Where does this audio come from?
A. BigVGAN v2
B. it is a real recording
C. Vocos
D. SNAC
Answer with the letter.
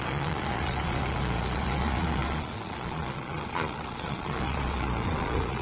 C